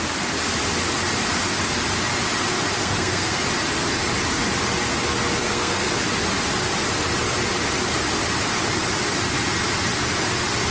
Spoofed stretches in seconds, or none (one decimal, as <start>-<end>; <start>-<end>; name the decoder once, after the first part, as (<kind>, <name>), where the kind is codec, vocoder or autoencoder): 2.8-3.4 (codec, SNAC); 5.4-5.9